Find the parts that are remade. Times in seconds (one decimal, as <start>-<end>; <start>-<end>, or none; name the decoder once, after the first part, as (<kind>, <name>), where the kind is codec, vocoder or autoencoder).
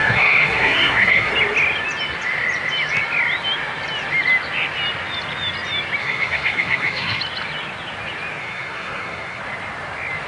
0.0-1.3 (codec, SNAC); 6.0-7.2; 8.4-9.4